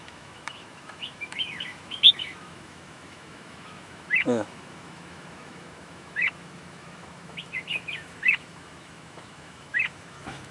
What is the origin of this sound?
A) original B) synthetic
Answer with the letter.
B